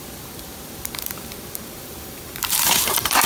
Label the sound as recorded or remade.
remade